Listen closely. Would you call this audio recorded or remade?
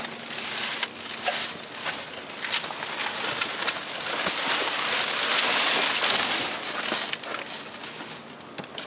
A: recorded